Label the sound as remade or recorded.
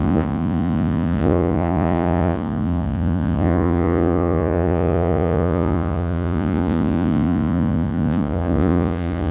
remade